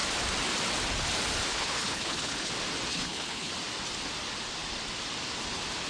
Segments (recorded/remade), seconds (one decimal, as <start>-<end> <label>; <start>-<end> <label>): 0.0-1.5 recorded; 1.5-2.5 remade; 2.5-2.9 recorded; 2.9-3.5 remade; 3.5-5.9 recorded